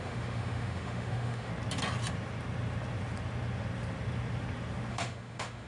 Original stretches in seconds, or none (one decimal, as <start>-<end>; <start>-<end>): 1.5-4.9

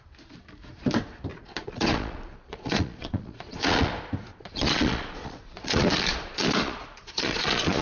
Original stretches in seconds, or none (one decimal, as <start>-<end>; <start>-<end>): 0.0-1.3; 3.9-4.3

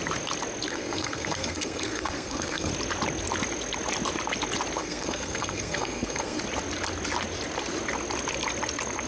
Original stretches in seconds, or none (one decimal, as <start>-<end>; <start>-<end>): 0.0-0.7; 2.7-4.8; 6.4-9.1